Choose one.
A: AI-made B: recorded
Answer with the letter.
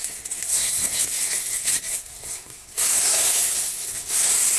A